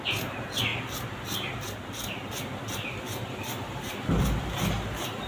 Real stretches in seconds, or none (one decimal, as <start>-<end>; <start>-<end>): 0.0-5.3